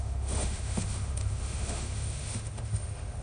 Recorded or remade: remade